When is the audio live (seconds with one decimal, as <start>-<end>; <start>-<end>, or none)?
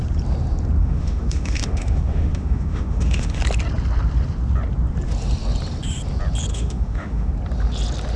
0.0-0.8; 3.4-6.5; 7.3-8.2